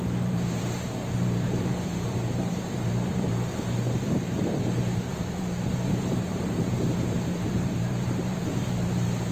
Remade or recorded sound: remade